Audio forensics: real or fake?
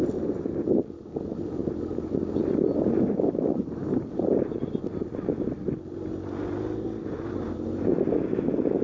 real